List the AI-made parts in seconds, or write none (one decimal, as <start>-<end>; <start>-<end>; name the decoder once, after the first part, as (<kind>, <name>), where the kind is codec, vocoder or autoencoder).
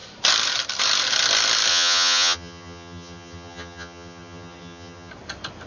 1.7-5.1 (vocoder, HiFi-GAN)